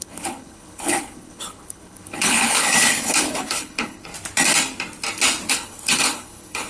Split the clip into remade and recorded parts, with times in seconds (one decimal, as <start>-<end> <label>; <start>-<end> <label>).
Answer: 0.0-4.1 remade; 4.1-5.5 recorded; 5.5-6.7 remade